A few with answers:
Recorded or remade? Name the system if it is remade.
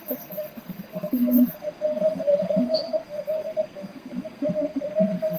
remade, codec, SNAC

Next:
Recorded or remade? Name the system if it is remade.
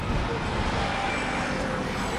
recorded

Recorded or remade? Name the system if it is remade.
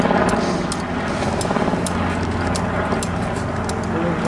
recorded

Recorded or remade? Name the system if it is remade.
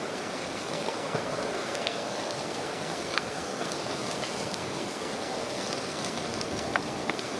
remade, codec, SNAC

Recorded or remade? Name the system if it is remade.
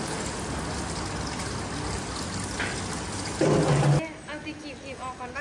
recorded